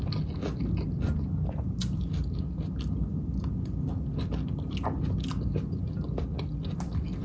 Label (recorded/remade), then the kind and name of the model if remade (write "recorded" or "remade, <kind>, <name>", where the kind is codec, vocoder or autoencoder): recorded